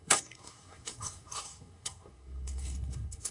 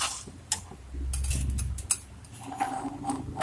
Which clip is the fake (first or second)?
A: first